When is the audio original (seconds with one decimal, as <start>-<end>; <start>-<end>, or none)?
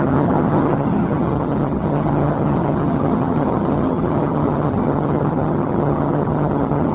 none